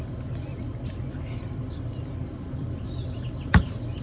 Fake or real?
fake